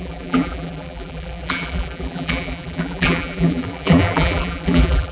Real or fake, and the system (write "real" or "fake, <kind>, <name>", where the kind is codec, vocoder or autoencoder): fake, vocoder, BigVGAN v2